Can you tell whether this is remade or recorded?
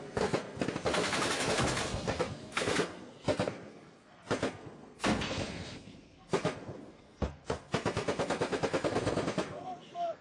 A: remade